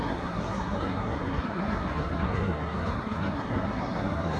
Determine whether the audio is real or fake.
fake